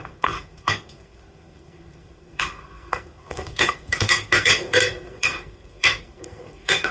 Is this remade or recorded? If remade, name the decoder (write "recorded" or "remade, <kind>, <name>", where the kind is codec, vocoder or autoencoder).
remade, codec, SNAC